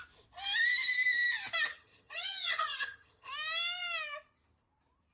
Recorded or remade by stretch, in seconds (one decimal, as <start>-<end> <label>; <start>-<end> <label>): 0.0-1.7 recorded; 1.7-3.3 remade; 3.3-5.1 recorded